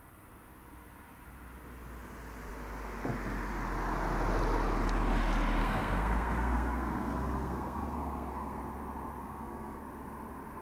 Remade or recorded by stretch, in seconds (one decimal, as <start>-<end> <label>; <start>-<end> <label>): 0.0-5.6 recorded; 5.6-8.6 remade; 8.6-9.2 recorded; 9.2-9.8 remade; 9.8-10.6 recorded